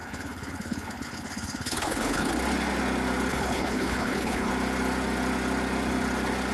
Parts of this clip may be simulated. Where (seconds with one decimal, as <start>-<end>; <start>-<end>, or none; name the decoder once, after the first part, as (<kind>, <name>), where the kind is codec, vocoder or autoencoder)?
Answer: 0.0-2.3 (codec, HILCodec); 3.3-4.5

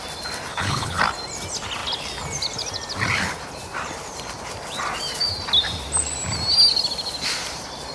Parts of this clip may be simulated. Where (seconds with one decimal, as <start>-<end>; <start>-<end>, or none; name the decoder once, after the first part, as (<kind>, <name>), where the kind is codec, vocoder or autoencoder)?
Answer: 0.5-1.0 (codec, HILCodec)

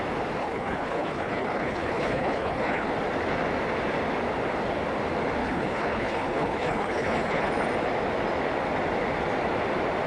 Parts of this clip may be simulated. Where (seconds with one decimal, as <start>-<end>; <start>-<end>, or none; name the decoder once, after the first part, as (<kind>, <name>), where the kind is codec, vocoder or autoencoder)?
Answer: 0.4-2.9 (codec, HILCodec); 5.4-7.5

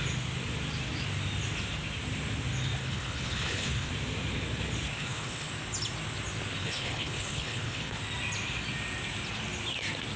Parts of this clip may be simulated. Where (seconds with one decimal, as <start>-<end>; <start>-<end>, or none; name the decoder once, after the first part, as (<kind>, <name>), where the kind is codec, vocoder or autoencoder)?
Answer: 2.8-3.9 (codec, HILCodec); 5.0-5.5; 6.6-8.0

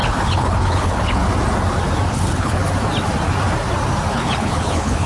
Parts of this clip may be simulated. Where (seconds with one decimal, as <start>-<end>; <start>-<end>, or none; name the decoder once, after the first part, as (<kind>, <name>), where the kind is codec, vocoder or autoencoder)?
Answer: 0.0-1.2 (codec, HILCodec); 2.1-2.6; 4.1-5.1